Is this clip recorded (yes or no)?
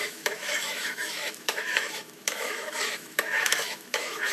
no